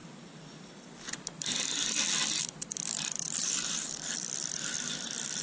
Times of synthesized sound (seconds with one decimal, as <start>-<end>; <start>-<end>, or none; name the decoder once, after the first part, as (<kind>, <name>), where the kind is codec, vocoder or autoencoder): 3.4-4.1 (vocoder, BigVGAN v2)